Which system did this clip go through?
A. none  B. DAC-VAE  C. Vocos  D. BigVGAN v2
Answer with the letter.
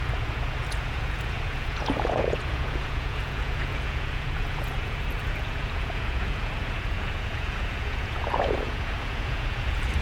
C